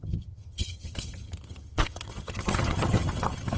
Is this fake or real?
fake